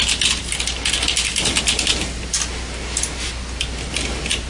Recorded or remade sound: recorded